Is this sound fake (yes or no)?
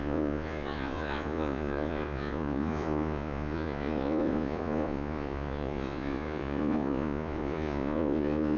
yes